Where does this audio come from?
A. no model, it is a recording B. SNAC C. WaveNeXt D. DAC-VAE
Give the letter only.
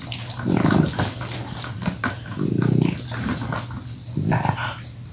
A